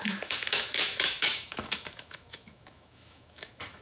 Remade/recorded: remade